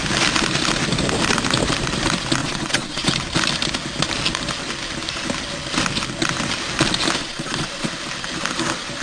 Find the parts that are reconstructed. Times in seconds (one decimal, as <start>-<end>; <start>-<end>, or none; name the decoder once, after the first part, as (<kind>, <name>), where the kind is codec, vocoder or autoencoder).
2.4-3.1 (vocoder, Vocos); 7.2-7.9

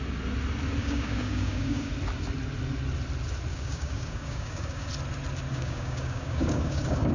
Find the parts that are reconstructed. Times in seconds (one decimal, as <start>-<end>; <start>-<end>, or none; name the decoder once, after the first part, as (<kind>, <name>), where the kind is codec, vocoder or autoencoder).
0.8-1.9 (codec, DAC); 3.5-4.9; 5.5-7.1

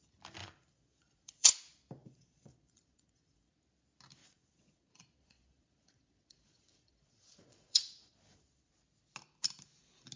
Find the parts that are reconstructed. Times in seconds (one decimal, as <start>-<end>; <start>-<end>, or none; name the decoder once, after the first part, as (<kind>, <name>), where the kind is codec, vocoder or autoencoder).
0.4-1.5 (vocoder, Vocos); 2.0-3.5; 4.2-8.7

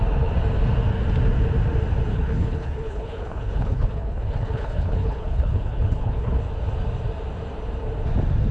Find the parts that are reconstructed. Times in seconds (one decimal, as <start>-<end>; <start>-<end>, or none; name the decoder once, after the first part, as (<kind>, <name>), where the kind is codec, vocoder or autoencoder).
2.1-6.4 (codec, HILCodec)

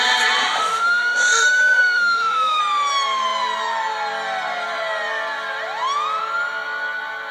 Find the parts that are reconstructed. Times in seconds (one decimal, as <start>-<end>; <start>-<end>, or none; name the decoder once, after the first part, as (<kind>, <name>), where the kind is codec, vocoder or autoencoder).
0.4-2.6 (autoencoder, DAC-VAE)